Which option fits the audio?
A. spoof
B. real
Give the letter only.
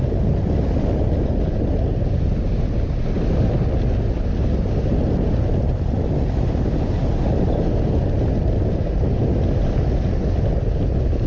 B